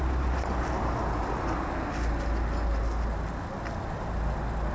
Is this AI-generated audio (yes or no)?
no